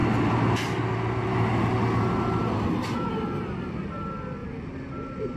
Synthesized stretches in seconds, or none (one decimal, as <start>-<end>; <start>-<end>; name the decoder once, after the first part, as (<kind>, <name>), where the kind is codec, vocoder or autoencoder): 4.4-5.4 (vocoder, BigVGAN v2)